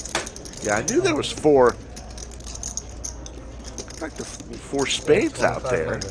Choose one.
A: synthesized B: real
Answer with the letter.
B